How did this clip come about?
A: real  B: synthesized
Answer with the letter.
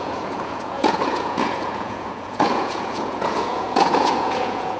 B